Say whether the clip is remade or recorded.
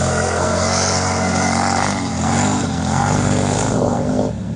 remade